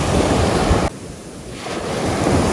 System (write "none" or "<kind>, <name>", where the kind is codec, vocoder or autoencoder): none